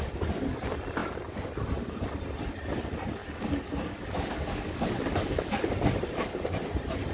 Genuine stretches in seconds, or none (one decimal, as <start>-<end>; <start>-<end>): 0.0-3.2; 5.7-7.1